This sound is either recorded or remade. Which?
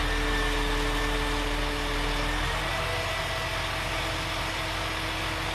recorded